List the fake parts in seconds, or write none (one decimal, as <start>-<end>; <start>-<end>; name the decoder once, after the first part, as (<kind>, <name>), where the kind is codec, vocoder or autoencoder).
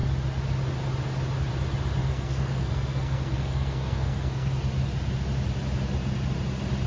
2.0-4.5 (codec, SNAC)